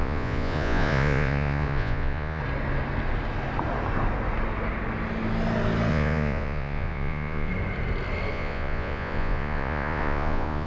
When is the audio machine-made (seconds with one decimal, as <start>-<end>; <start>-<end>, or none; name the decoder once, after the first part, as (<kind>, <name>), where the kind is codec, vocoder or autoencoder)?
0.0-2.4 (vocoder, Vocos); 5.9-7.5; 8.3-10.7